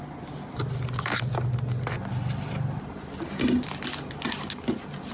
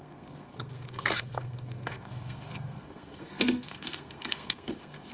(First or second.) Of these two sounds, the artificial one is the second